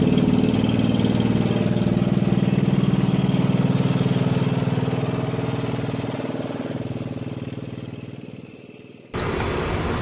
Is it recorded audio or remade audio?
recorded